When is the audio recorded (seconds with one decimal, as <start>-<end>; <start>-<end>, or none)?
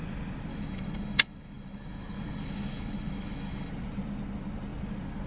0.0-0.5; 3.7-5.3